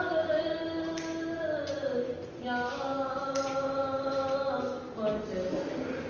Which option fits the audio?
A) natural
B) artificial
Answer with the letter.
A